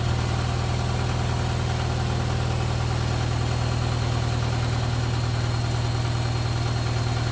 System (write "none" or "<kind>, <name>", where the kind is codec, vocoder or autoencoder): none